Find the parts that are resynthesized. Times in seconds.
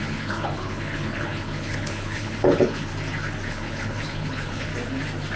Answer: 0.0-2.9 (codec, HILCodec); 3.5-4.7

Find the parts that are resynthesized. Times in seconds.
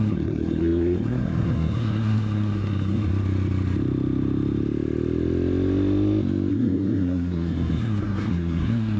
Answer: 0.0-3.1 (codec, SNAC); 6.5-9.0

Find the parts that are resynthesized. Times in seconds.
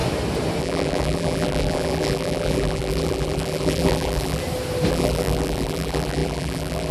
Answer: 0.6-4.4 (vocoder, BigVGAN v2); 4.9-6.9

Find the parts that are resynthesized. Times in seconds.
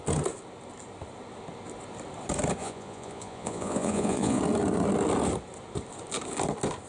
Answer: 2.6-4.4 (vocoder, Vocos)